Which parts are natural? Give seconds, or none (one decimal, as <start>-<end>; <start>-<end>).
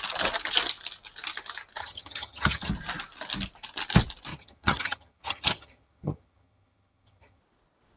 0.0-1.8; 2.7-4.3; 7.4-8.0